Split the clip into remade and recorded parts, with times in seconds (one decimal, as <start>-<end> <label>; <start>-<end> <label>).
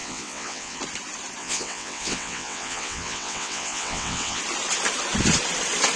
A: 0.0-0.8 remade; 0.8-1.4 recorded; 1.4-4.4 remade; 4.4-6.0 recorded